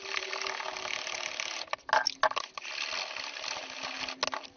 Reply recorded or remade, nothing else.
recorded